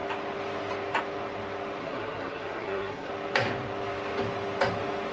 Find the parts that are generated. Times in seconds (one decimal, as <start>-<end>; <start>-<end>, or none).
1.8-3.1